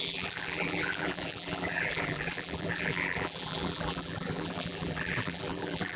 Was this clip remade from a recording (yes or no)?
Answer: yes